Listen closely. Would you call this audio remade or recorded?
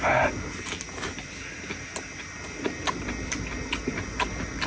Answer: recorded